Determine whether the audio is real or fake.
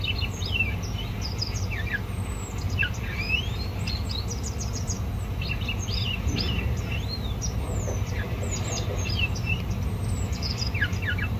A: real